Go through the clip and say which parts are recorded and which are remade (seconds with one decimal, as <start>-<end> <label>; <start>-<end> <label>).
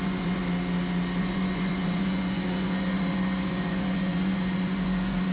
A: 0.0-0.4 remade; 0.4-1.2 recorded; 1.2-5.3 remade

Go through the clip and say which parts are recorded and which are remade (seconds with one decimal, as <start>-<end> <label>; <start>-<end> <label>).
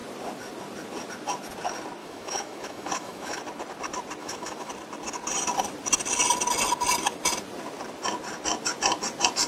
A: 0.0-2.0 recorded; 2.0-3.4 remade; 3.4-4.2 recorded; 4.2-4.7 remade; 4.7-9.5 recorded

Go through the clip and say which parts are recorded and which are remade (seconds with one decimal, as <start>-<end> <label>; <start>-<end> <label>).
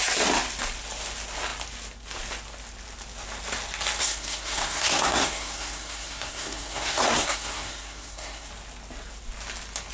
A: 0.0-4.0 recorded; 4.0-8.5 remade; 8.5-9.9 recorded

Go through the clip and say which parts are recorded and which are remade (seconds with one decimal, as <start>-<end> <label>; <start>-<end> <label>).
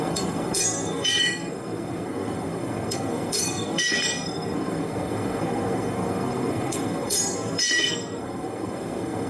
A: 0.0-9.3 remade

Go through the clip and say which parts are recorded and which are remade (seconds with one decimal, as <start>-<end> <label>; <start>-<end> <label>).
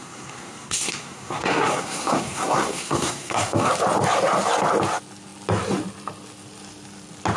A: 0.0-3.7 remade; 3.7-7.4 recorded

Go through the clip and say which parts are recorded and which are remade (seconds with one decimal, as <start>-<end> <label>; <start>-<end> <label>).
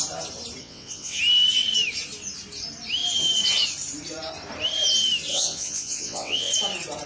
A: 0.0-0.6 recorded; 0.6-1.2 remade; 1.2-5.3 recorded; 5.3-6.5 remade; 6.5-7.1 recorded